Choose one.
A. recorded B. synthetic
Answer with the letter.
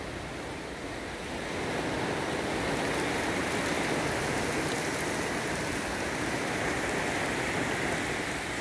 A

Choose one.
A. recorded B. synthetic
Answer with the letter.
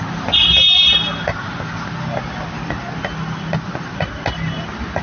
A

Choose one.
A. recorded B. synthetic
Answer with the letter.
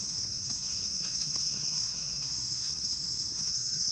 B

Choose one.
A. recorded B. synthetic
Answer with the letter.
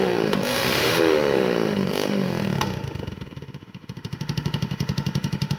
B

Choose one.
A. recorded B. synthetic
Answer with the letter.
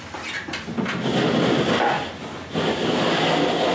A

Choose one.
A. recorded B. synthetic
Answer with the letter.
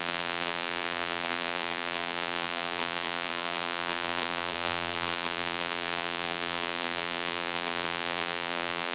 B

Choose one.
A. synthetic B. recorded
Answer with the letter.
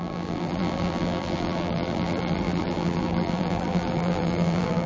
A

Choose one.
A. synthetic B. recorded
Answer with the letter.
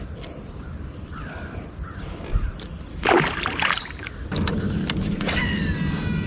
B